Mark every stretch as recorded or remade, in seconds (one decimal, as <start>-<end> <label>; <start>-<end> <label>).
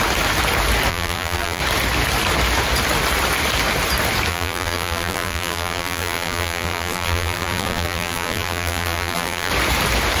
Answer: 0.0-0.9 recorded; 0.9-1.6 remade; 1.6-4.3 recorded; 4.3-9.5 remade; 9.5-10.2 recorded